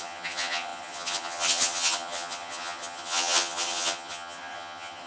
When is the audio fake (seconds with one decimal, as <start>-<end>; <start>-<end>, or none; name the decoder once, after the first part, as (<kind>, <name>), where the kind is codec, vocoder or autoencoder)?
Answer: 0.0-5.1 (vocoder, HiFi-GAN)